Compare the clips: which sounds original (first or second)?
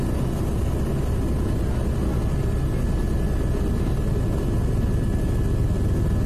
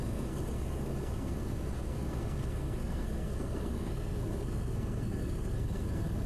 first